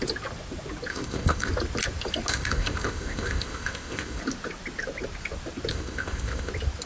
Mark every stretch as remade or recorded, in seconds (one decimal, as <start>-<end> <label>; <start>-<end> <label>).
0.0-0.9 recorded; 0.9-1.5 remade; 1.5-2.3 recorded; 2.3-4.2 remade; 4.2-5.7 recorded; 5.7-6.5 remade; 6.5-6.9 recorded